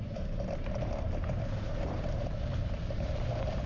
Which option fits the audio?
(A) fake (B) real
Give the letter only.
A